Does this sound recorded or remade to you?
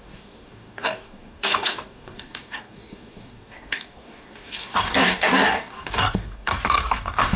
remade